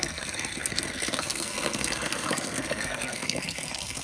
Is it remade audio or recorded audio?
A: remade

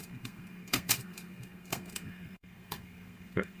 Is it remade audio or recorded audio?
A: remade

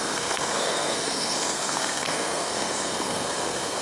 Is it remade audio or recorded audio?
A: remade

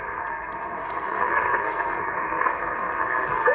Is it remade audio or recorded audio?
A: remade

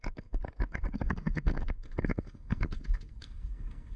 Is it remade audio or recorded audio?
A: remade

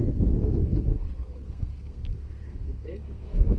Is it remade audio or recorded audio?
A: remade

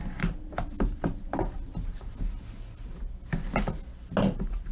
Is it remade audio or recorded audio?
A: recorded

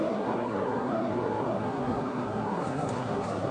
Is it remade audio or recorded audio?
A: remade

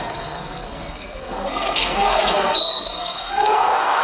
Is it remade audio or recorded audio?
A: remade